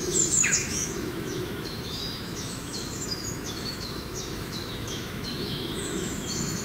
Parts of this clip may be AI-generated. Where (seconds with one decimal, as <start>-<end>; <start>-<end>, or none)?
0.0-6.6